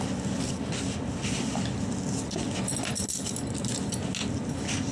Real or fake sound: real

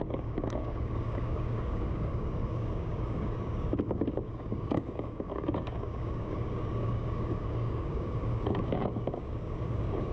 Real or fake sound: fake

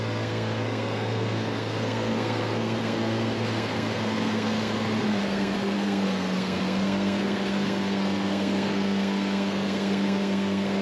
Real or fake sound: fake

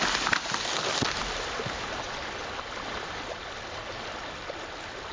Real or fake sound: real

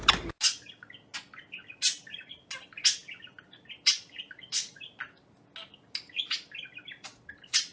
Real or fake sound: real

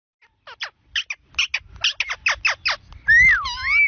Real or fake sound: real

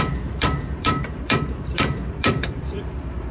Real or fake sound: fake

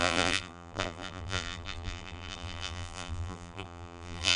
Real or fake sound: fake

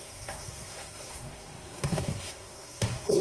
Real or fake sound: fake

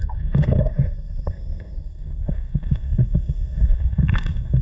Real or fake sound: fake